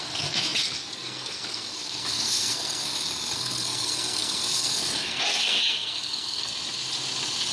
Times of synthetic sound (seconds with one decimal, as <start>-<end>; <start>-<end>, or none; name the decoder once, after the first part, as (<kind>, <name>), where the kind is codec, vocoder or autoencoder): 0.0-6.5 (codec, SNAC)